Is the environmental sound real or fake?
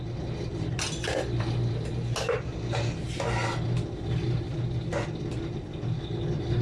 real